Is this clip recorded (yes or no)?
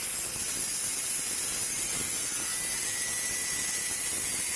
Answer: yes